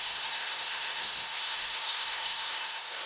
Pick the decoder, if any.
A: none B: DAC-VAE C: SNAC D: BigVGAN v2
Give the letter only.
C